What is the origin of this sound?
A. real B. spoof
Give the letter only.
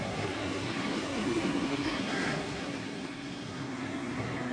B